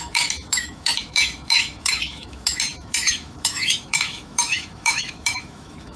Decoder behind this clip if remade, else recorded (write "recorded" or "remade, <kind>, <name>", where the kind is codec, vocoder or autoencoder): remade, autoencoder, DAC-VAE